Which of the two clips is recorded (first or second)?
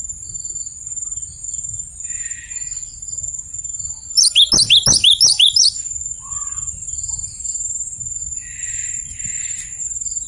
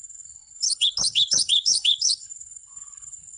first